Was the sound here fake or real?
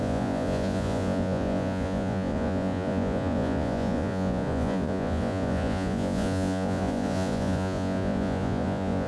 fake